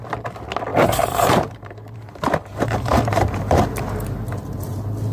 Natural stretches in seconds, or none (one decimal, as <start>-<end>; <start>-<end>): 0.0-0.7; 3.8-5.1